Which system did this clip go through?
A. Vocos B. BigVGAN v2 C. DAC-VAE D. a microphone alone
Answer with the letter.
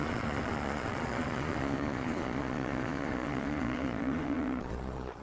A